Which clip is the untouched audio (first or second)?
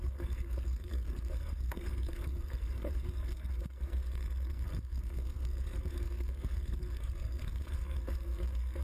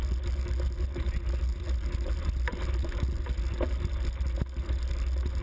second